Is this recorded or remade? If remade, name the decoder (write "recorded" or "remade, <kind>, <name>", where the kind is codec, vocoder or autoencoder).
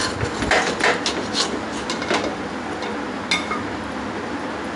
recorded